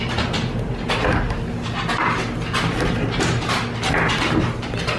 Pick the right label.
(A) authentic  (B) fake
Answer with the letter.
A